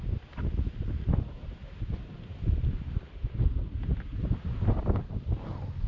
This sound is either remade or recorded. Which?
recorded